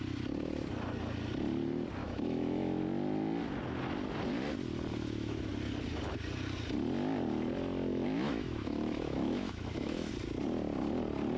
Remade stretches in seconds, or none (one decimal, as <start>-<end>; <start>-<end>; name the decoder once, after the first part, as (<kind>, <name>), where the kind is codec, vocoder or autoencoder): 2.0-2.8 (autoencoder, DAC-VAE); 4.9-5.5; 7.9-10.1